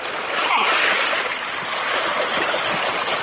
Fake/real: fake